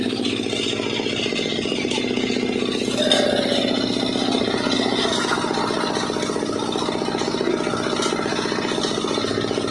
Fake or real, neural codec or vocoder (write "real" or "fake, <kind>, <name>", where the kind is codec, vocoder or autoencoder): real